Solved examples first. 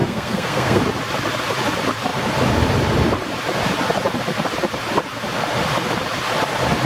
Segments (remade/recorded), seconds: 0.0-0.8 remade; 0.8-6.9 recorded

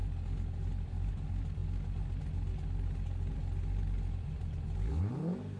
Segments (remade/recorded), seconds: 0.0-5.6 recorded

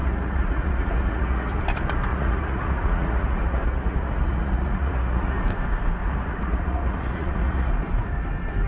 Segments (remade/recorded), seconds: 0.0-1.6 remade; 1.6-2.1 recorded; 2.1-5.4 remade; 5.4-6.0 recorded; 6.0-7.7 remade; 7.7-8.7 recorded

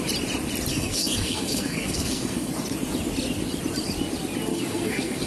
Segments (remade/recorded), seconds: 0.0-0.7 recorded; 0.7-2.5 remade; 2.5-4.5 recorded; 4.5-5.3 remade

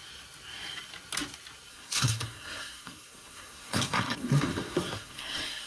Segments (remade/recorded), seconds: 0.0-1.7 recorded; 1.7-5.7 remade

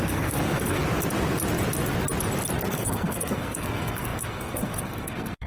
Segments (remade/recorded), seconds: 0.0-0.8 remade; 0.8-2.7 recorded; 2.7-5.5 remade

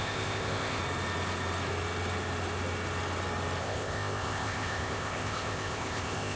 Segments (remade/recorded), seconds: 0.0-0.8 remade; 0.8-3.6 recorded; 3.6-6.4 remade